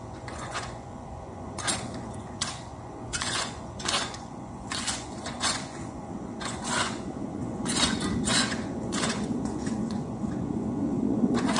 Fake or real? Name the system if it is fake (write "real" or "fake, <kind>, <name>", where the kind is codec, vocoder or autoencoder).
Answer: fake, vocoder, Vocos